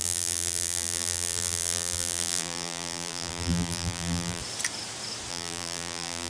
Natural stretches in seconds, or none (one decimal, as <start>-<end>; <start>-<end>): 4.4-5.3